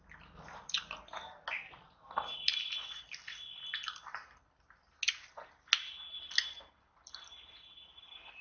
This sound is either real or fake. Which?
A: real